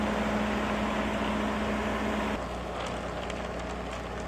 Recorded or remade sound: recorded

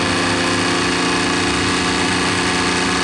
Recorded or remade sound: recorded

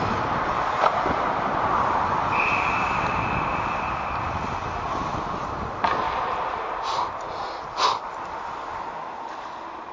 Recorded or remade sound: recorded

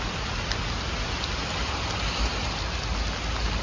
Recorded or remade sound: recorded